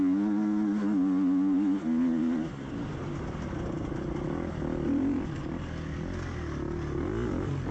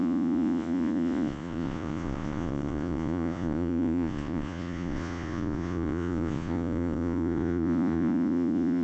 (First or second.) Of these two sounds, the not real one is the second